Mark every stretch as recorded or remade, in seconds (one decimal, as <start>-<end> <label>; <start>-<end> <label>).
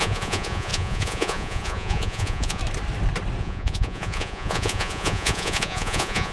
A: 0.0-2.6 remade; 2.6-3.4 recorded; 3.4-6.3 remade